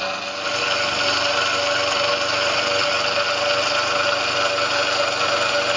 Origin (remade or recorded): recorded